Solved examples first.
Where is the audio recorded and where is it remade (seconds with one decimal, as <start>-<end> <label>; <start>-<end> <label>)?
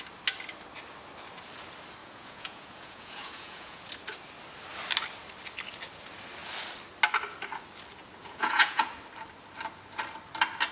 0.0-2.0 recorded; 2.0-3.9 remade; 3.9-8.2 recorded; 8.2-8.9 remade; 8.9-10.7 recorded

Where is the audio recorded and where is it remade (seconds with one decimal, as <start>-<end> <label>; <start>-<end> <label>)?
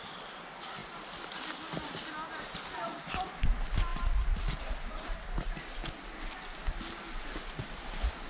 0.0-8.3 recorded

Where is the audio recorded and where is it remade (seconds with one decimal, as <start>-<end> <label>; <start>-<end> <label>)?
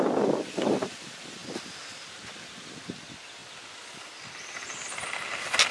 0.0-5.7 recorded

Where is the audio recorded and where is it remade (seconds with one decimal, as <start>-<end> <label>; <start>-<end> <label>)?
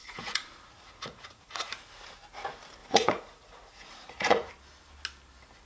0.0-1.7 remade; 1.7-2.8 recorded; 2.8-4.5 remade; 4.5-5.7 recorded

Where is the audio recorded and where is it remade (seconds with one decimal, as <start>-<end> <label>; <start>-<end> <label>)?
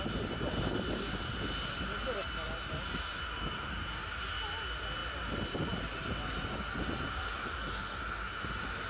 0.0-8.9 recorded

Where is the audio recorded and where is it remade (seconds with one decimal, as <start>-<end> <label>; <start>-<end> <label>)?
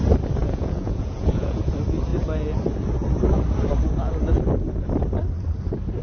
0.0-0.4 recorded; 0.4-1.7 remade; 1.7-6.0 recorded